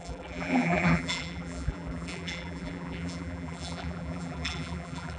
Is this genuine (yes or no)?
no